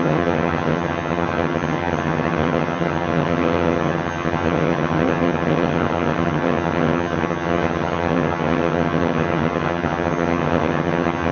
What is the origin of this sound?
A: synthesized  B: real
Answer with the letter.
A